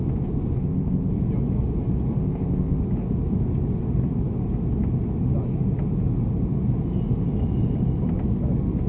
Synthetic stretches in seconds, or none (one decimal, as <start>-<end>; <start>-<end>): 0.6-1.1; 2.2-2.8